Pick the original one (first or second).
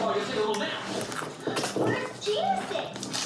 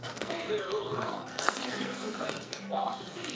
first